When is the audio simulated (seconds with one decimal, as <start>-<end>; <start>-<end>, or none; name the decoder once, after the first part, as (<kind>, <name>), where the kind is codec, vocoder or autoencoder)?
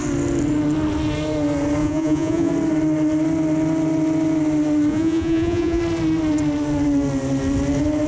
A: 1.8-2.5 (vocoder, Vocos); 4.9-5.8